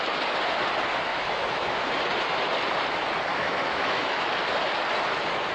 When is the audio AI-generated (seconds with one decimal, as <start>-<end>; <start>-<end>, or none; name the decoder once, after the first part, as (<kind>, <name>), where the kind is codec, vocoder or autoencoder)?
1.1-1.9 (autoencoder, DAC-VAE); 3.3-4.3